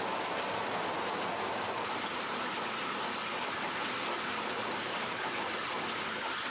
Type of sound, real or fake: real